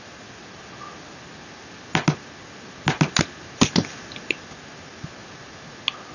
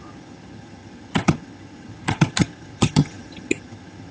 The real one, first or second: first